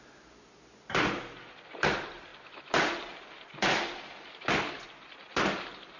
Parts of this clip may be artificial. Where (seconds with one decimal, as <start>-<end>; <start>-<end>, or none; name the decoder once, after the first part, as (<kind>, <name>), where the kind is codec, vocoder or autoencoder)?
none